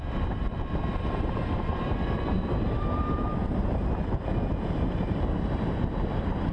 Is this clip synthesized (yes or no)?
yes